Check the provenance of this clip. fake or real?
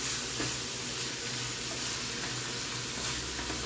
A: real